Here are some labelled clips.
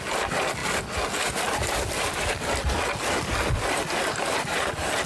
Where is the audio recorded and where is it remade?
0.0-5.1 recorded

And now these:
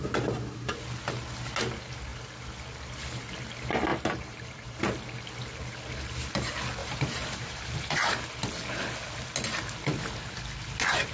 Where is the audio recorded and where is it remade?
0.0-3.9 recorded; 3.9-4.8 remade; 4.8-6.8 recorded; 6.8-8.2 remade; 8.2-11.1 recorded

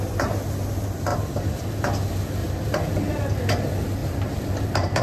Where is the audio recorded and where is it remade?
0.0-1.1 recorded; 1.1-1.7 remade; 1.7-2.4 recorded; 2.4-3.2 remade; 3.2-4.0 recorded; 4.0-5.0 remade

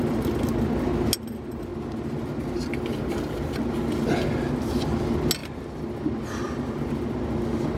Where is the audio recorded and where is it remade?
0.0-5.4 recorded; 5.4-6.2 remade; 6.2-7.8 recorded

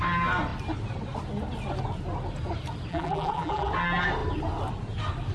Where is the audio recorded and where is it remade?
0.0-2.9 recorded; 2.9-3.7 remade; 3.7-5.3 recorded

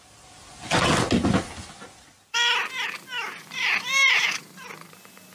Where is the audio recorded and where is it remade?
0.0-3.3 recorded; 3.3-4.3 remade; 4.3-5.3 recorded

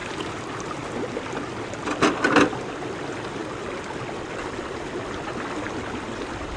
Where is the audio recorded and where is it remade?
0.0-6.6 recorded

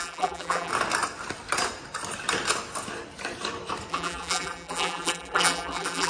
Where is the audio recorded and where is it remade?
0.0-0.7 remade; 0.7-3.9 recorded; 3.9-6.1 remade